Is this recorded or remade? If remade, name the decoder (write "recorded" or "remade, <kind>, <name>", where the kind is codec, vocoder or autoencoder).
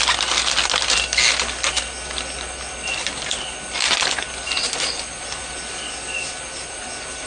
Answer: recorded